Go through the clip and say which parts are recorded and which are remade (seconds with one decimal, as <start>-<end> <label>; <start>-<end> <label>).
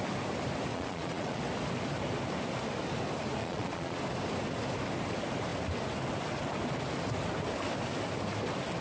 0.0-0.7 recorded; 0.7-1.4 remade; 1.4-3.4 recorded; 3.4-4.0 remade; 4.0-8.8 recorded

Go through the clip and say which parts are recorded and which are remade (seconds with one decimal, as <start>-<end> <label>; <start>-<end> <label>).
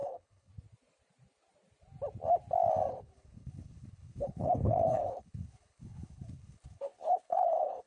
0.0-0.5 remade; 0.5-2.9 recorded; 2.9-7.9 remade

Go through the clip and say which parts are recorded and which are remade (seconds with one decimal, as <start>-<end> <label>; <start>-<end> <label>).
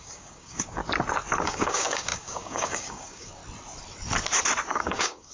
0.0-0.8 remade; 0.8-1.4 recorded; 1.4-3.4 remade; 3.4-4.7 recorded; 4.7-5.3 remade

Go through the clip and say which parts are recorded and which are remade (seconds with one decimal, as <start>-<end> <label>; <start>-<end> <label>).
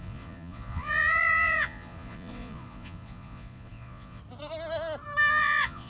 0.0-4.2 remade; 4.2-5.3 recorded; 5.3-5.9 remade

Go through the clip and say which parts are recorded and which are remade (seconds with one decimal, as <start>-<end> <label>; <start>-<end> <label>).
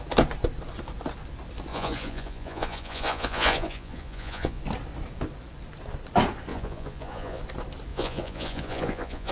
0.0-1.7 recorded; 1.7-4.6 remade; 4.6-6.5 recorded; 6.5-7.4 remade; 7.4-7.9 recorded; 7.9-9.3 remade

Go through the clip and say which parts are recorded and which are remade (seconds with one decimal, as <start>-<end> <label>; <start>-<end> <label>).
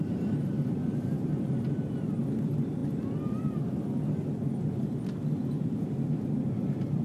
0.0-7.0 recorded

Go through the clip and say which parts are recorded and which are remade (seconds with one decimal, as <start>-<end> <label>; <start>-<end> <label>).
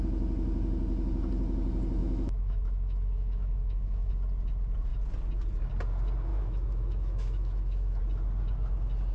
0.0-2.0 recorded; 2.0-4.1 remade; 4.1-6.3 recorded; 6.3-8.0 remade; 8.0-9.1 recorded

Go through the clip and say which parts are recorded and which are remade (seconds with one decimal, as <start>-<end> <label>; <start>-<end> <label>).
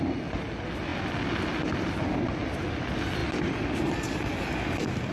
0.0-5.1 recorded